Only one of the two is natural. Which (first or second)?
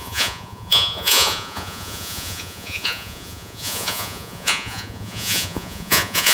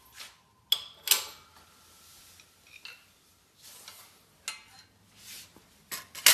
second